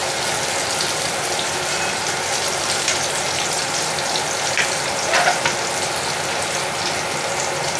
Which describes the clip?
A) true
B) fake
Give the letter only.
A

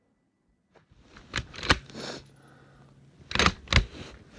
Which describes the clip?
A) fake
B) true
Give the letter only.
B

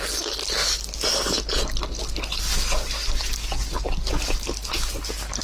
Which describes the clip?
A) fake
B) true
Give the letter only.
B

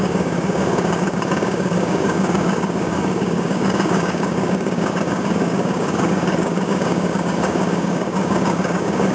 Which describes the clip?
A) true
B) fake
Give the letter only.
B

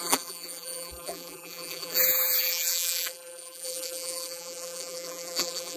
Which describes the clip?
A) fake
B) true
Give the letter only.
A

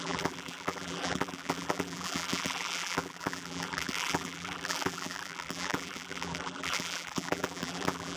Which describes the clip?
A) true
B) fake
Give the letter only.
B